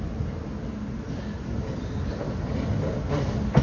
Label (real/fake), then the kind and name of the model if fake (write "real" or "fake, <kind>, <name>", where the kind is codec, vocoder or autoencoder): real